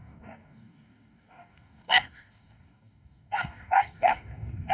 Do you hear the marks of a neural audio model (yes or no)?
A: yes